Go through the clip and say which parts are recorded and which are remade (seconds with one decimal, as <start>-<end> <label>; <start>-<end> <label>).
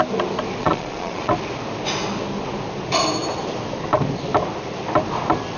0.0-0.6 recorded; 0.6-1.3 remade; 1.3-5.6 recorded